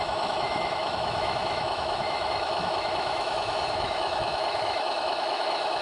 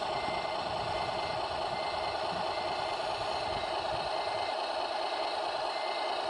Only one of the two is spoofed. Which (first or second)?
first